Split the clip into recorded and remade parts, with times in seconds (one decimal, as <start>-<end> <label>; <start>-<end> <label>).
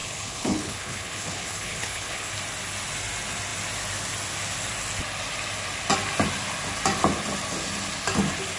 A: 0.0-2.3 remade; 2.3-8.6 recorded